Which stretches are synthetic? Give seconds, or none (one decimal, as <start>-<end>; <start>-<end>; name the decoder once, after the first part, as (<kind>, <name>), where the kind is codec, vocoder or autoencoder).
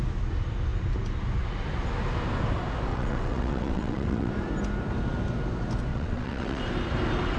2.9-4.3 (vocoder, WaveNeXt); 5.9-6.6